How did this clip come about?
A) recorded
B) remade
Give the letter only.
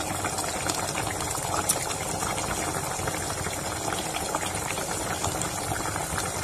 A